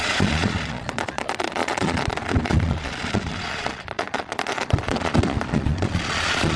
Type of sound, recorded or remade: remade